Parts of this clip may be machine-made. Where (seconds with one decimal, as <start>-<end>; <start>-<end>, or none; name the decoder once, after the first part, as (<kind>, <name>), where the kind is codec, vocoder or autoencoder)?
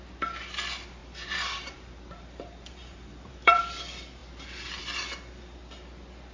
1.0-3.6 (vocoder, BigVGAN v2)